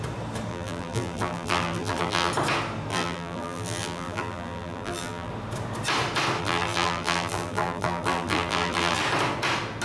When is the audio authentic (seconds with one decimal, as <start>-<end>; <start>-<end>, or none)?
0.0-0.5; 2.3-2.9; 5.3-6.4; 9.0-9.8